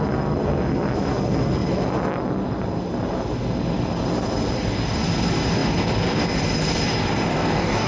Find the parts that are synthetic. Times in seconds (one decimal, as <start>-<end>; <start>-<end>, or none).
7.3-7.9